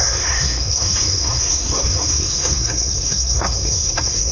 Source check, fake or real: fake